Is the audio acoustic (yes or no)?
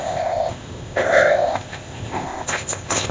no